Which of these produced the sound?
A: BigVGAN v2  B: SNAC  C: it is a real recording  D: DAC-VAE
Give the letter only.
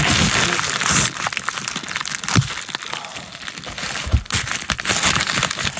C